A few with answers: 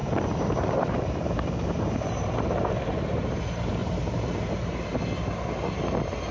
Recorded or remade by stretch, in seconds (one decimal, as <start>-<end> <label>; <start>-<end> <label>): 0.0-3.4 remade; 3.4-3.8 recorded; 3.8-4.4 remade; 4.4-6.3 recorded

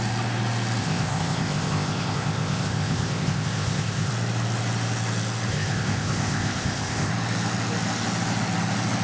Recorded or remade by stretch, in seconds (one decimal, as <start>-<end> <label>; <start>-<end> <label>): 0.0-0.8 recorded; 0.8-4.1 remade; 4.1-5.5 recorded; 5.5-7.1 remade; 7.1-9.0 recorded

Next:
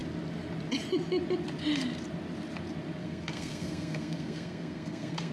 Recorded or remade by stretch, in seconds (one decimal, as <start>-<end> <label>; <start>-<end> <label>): 0.0-3.0 recorded; 3.0-5.3 remade